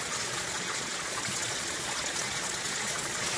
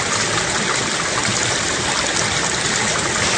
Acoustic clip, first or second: second